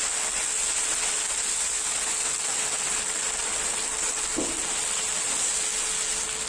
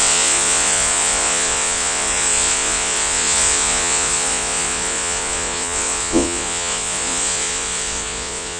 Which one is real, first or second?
first